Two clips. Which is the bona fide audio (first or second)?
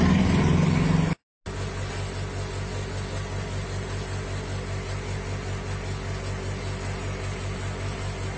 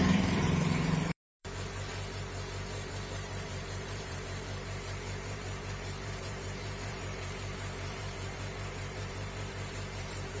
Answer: first